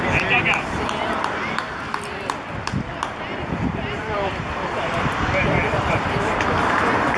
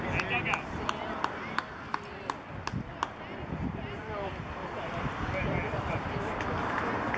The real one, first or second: second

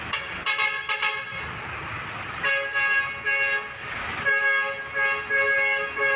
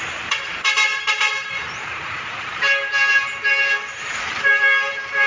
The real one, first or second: first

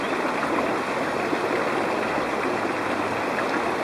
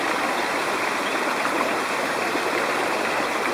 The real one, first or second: first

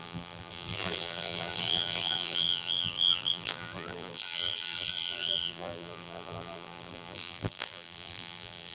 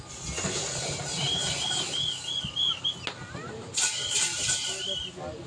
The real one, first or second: second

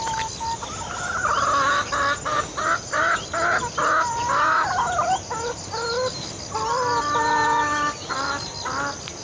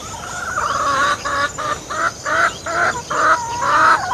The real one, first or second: first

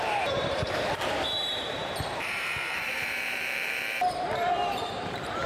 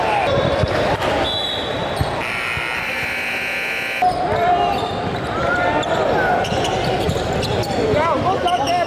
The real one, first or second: second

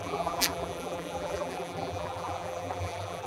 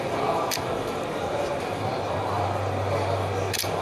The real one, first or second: second